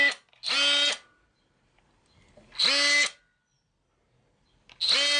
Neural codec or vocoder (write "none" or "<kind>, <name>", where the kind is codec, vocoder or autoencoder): none